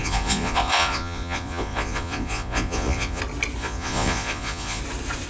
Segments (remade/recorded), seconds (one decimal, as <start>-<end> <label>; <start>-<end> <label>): 0.0-3.2 remade; 3.2-3.6 recorded; 3.6-4.8 remade; 4.8-5.3 recorded